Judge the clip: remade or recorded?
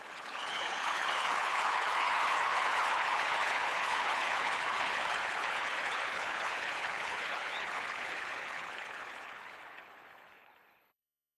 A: remade